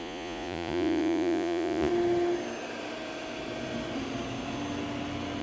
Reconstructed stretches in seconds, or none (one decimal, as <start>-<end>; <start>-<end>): 0.0-1.9